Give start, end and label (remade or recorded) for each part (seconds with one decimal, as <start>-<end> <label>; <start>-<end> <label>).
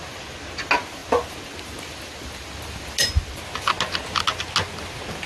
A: 0.0-5.3 recorded